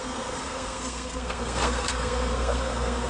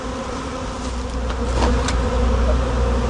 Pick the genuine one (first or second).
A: second